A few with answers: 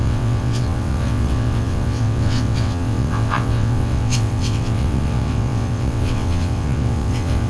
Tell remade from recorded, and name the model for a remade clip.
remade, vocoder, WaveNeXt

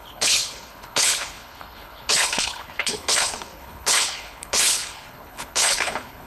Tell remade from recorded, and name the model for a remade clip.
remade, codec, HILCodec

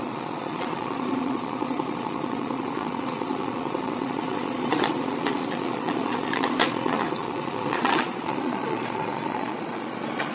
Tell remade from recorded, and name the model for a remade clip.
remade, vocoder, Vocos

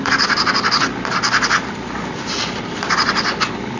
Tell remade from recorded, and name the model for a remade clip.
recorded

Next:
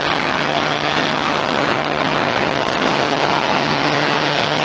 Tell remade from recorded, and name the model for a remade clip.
remade, vocoder, HiFi-GAN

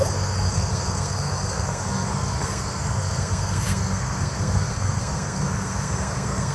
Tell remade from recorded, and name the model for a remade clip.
remade, codec, SNAC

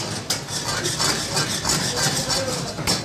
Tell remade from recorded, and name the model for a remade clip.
recorded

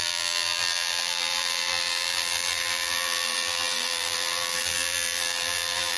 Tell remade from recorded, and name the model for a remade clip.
remade, vocoder, BigVGAN v2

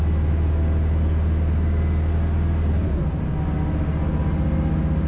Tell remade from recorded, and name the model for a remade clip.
recorded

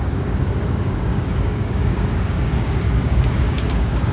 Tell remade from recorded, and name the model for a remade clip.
remade, codec, DAC